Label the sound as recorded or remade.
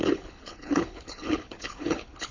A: remade